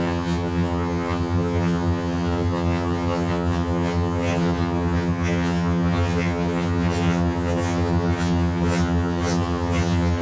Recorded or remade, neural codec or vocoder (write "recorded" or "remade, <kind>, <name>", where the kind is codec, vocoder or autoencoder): remade, vocoder, HiFi-GAN